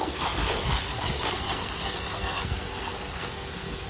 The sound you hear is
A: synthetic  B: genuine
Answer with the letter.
A